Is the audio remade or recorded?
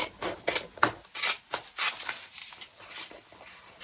recorded